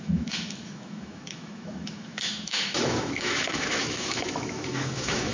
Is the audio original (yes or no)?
no